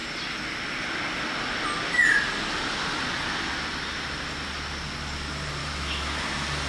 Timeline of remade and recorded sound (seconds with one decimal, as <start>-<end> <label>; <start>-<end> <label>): 0.0-5.6 recorded; 5.6-6.2 remade; 6.2-6.7 recorded